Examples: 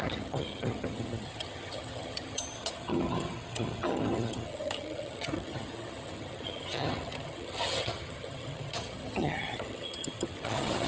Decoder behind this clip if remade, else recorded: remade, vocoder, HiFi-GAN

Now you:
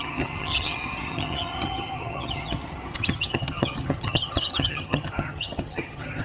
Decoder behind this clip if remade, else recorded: remade, vocoder, HiFi-GAN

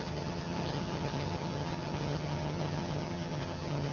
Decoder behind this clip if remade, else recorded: remade, vocoder, HiFi-GAN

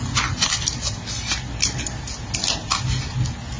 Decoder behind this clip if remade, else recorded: recorded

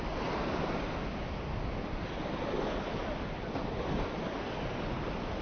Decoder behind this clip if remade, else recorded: recorded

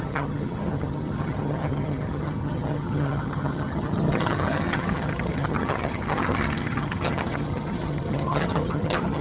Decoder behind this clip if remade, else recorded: remade, vocoder, HiFi-GAN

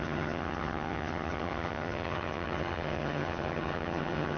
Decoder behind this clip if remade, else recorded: remade, vocoder, HiFi-GAN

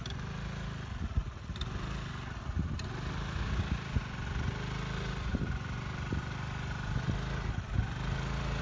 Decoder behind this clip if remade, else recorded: recorded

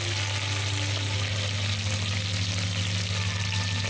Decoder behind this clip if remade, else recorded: recorded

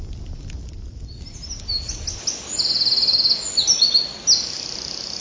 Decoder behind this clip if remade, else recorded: recorded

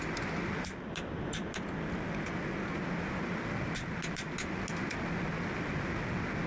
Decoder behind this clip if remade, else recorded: recorded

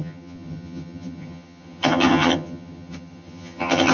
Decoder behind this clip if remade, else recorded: remade, vocoder, HiFi-GAN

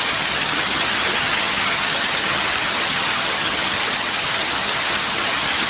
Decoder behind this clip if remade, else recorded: remade, vocoder, HiFi-GAN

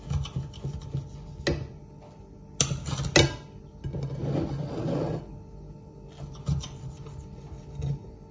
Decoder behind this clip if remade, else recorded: recorded